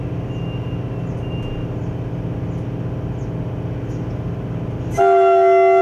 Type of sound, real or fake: real